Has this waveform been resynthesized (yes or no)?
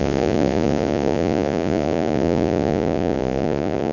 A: yes